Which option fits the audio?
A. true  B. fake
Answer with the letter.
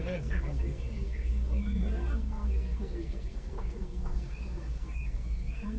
B